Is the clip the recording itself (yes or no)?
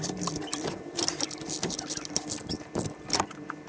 no